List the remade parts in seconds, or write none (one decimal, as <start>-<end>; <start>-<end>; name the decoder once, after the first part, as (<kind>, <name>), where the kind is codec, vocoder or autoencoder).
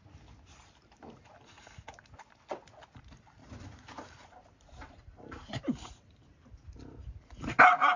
3.4-6.5 (vocoder, BigVGAN v2)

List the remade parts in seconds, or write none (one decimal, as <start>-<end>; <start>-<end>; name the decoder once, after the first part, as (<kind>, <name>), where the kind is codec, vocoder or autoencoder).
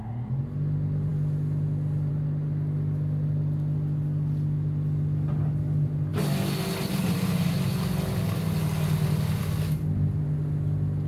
none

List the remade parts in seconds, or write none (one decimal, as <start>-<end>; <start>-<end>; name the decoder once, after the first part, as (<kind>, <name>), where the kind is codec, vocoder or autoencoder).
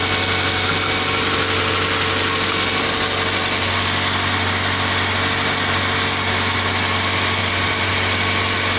7.4-7.9 (vocoder, BigVGAN v2)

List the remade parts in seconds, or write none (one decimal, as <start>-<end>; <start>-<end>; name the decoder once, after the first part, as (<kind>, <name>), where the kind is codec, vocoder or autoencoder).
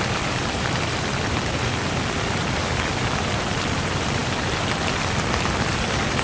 0.0-6.2 (vocoder, BigVGAN v2)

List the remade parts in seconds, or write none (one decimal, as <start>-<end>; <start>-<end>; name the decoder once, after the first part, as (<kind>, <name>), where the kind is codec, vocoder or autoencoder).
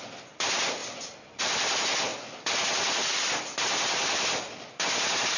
none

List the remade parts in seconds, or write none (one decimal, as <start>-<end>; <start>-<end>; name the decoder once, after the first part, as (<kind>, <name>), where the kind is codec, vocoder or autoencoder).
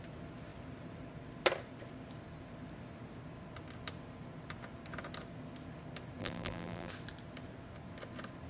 6.2-6.9 (vocoder, BigVGAN v2)